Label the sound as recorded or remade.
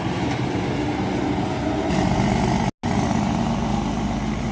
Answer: recorded